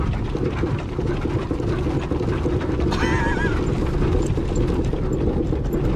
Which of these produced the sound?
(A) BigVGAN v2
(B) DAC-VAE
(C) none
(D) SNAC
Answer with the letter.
C